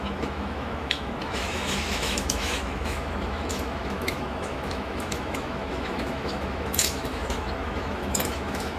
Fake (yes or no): yes